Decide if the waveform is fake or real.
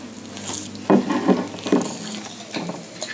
real